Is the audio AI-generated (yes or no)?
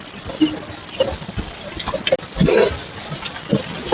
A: no